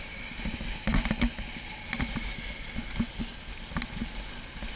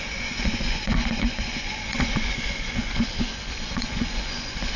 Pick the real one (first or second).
first